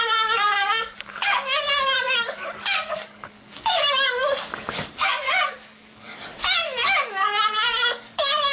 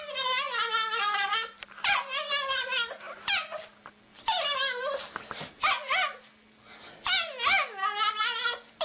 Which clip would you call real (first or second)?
second